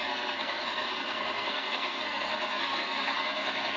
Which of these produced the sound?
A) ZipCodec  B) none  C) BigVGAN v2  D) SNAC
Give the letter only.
D